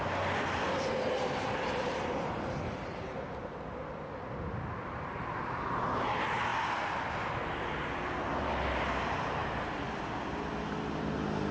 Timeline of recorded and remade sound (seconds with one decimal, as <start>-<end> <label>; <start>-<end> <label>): 0.0-11.5 recorded